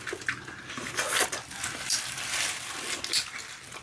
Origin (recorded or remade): recorded